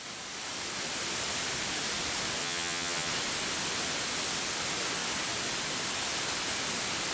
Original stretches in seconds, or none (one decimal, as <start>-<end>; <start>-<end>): 0.0-2.4; 3.1-7.1